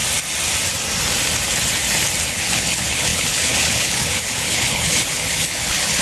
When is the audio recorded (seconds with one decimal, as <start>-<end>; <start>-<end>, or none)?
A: 0.0-2.3